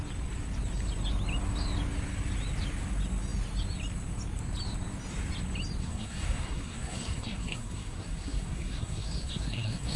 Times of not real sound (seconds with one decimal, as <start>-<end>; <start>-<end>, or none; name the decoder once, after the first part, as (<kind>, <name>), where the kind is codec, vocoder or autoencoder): 5.8-10.0 (codec, SNAC)